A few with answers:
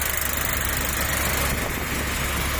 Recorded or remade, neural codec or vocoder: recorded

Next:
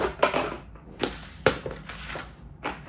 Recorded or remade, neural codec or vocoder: recorded